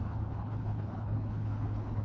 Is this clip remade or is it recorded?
remade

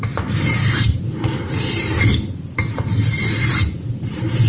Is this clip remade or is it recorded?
recorded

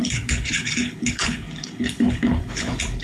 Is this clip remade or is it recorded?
remade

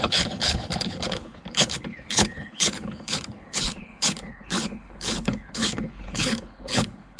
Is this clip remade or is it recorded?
remade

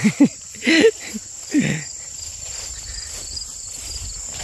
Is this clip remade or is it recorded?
recorded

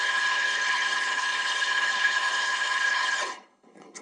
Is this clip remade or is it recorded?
remade